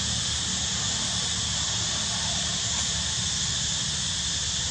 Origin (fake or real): real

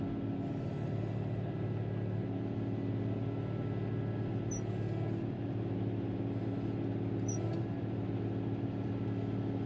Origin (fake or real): real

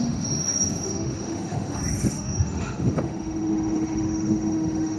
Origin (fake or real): fake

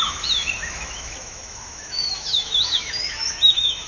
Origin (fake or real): fake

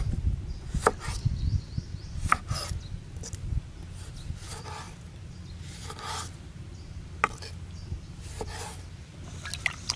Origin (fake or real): real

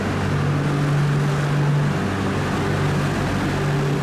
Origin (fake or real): real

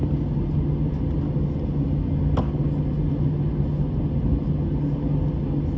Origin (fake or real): real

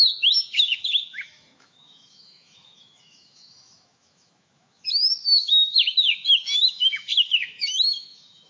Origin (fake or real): fake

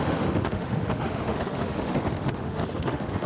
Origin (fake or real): fake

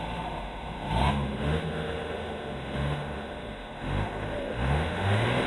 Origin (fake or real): fake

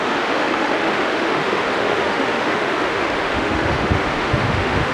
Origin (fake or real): fake